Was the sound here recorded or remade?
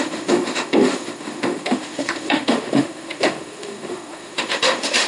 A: remade